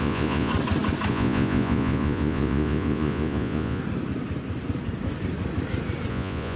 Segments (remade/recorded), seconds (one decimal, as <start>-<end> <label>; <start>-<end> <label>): 0.0-0.5 remade; 0.5-1.1 recorded; 1.1-3.8 remade; 3.8-6.1 recorded; 6.1-6.6 remade